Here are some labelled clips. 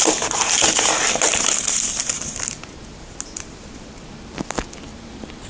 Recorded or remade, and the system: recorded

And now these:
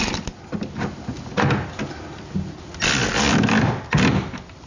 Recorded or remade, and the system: recorded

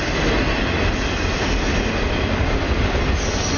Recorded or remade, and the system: recorded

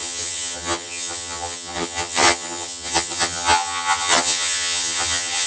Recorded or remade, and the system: remade, vocoder, HiFi-GAN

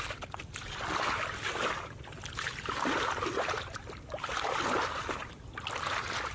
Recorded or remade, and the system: recorded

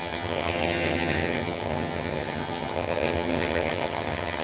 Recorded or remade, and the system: remade, vocoder, HiFi-GAN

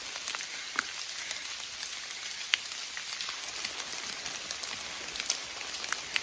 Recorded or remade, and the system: recorded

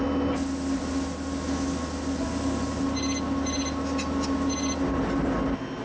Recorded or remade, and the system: recorded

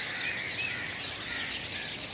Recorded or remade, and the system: recorded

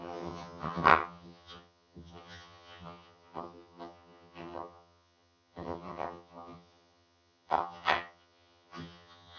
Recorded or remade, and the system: remade, vocoder, HiFi-GAN